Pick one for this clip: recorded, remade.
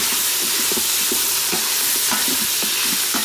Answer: remade